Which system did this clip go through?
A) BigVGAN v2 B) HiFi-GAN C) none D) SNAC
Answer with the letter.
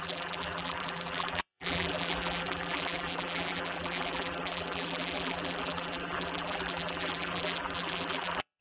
A